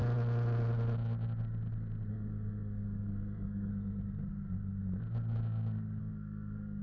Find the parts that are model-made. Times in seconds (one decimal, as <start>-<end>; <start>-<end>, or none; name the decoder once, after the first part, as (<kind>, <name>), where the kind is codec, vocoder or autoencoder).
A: 2.1-3.7 (codec, SNAC); 6.0-6.8